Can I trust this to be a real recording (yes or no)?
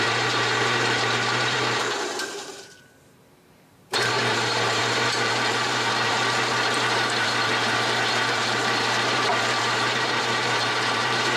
no